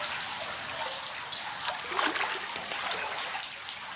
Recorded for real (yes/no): yes